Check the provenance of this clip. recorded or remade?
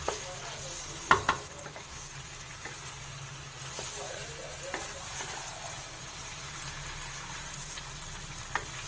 recorded